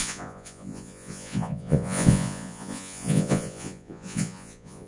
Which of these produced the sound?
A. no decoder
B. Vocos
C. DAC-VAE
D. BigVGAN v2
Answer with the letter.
B